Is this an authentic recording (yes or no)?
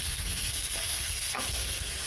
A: no